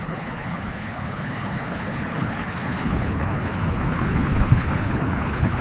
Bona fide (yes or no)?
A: no